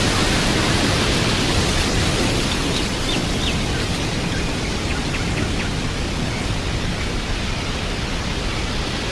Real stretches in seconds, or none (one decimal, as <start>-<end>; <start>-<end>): 0.0-9.1